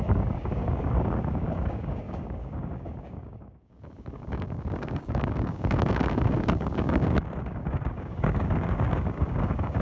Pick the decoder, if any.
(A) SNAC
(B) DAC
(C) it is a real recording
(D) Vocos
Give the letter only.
B